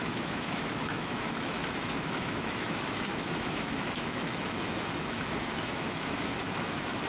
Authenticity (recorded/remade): remade